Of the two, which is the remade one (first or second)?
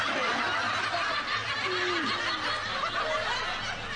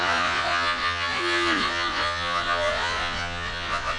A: second